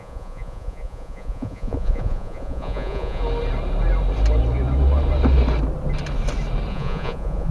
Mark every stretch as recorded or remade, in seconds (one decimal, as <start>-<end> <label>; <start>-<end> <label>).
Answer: 0.0-3.2 remade; 3.2-6.7 recorded; 6.7-7.5 remade